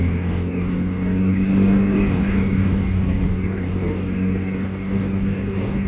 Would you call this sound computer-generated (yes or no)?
yes